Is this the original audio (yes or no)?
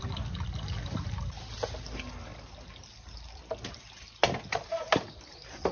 yes